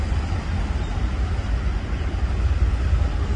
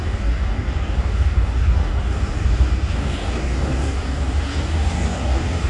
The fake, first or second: second